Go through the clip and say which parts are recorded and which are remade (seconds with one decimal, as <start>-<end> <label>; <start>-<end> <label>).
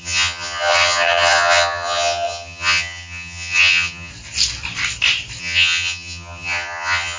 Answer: 0.0-4.1 remade; 4.1-5.4 recorded; 5.4-7.2 remade